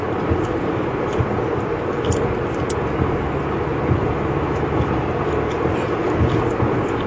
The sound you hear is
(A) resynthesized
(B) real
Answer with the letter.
B